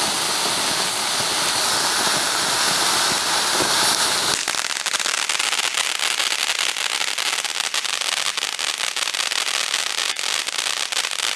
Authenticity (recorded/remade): recorded